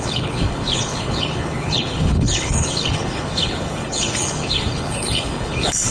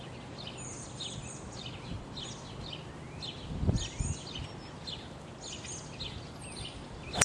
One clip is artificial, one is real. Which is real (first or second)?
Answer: second